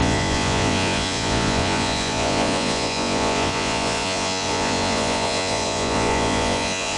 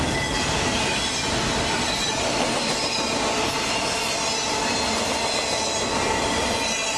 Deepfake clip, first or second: first